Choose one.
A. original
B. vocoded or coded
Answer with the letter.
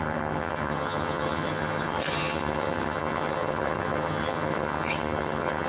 B